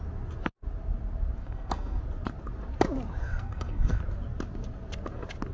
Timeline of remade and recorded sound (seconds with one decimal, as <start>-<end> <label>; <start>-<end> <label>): 0.0-1.4 recorded; 1.4-2.0 remade; 2.0-3.2 recorded; 3.2-4.0 remade; 4.0-5.5 recorded